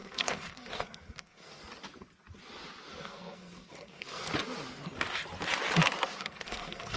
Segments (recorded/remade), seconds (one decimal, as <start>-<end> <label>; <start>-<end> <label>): 0.0-1.6 remade; 1.6-2.9 recorded; 2.9-4.3 remade; 4.3-6.2 recorded; 6.2-7.0 remade